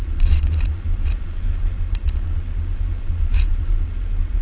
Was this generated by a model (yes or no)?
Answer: yes